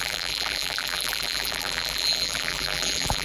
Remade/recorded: remade